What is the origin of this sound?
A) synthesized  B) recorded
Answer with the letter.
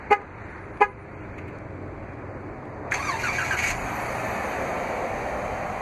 B